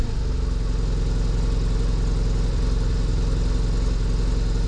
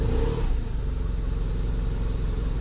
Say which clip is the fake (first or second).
second